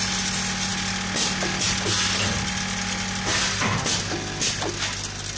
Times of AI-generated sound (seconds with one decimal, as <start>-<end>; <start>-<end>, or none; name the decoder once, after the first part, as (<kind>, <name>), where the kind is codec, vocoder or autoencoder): none